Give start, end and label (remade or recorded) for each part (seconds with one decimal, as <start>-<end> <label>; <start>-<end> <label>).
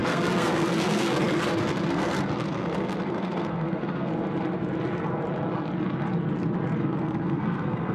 0.0-4.1 remade; 4.1-6.8 recorded; 6.8-7.9 remade